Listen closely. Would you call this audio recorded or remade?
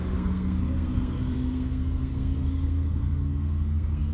remade